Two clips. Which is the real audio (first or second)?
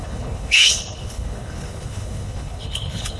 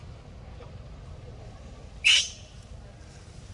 second